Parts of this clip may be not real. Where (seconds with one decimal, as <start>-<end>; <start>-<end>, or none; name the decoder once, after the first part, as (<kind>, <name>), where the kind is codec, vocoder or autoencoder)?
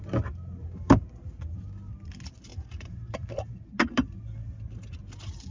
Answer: 2.5-3.7 (vocoder, BigVGAN v2)